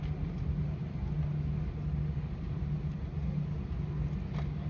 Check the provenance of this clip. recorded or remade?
recorded